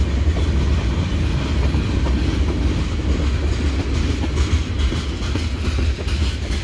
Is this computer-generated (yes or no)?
no